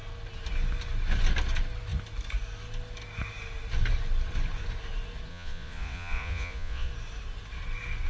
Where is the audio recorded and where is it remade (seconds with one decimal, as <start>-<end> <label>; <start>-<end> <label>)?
0.0-5.3 recorded; 5.3-6.9 remade; 6.9-8.1 recorded